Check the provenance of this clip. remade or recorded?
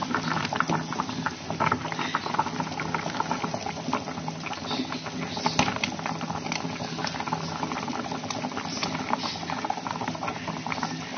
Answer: recorded